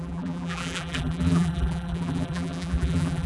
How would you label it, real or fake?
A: fake